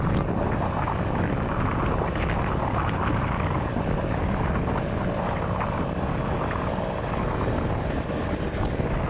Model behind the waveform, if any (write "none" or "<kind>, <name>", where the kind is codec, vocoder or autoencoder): none